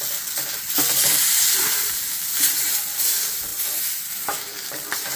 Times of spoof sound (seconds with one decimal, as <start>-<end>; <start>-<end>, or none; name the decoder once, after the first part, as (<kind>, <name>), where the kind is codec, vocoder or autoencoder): none